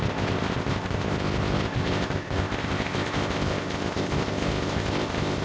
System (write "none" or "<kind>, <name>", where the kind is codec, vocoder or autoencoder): codec, ZipCodec